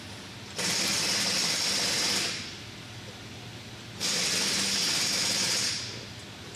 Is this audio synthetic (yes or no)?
no